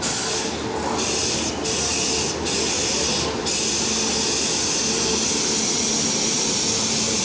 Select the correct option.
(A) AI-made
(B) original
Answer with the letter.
B